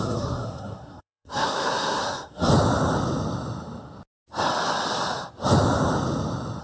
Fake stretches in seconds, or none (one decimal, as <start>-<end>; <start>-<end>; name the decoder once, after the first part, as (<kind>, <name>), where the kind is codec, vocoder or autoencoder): 0.0-2.5 (codec, SNAC)